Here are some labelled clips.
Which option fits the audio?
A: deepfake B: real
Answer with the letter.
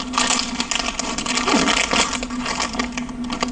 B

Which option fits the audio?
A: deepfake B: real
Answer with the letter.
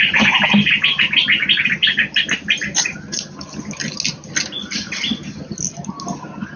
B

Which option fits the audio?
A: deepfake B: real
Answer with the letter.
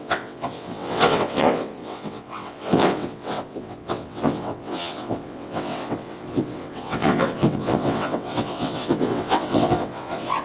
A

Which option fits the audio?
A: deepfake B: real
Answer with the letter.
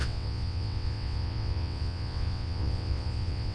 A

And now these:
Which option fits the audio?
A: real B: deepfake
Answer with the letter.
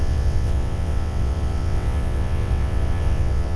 B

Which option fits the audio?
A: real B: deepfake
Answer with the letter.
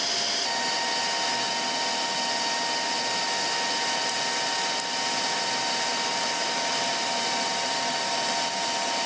A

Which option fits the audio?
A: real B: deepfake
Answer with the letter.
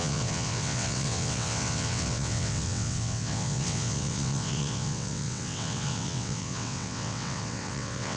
B